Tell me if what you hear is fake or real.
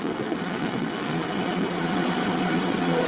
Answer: fake